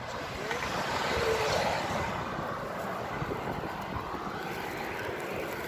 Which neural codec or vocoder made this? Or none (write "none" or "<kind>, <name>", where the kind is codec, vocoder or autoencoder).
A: none